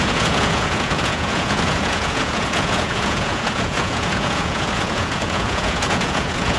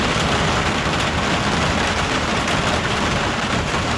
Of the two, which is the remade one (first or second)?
first